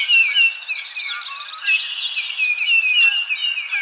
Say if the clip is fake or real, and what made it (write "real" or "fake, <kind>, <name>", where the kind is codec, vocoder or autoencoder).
real